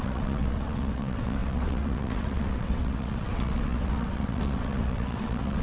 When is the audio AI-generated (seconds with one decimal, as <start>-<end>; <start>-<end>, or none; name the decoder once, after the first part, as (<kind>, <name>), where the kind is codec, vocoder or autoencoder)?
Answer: 0.0-5.6 (vocoder, WaveNeXt)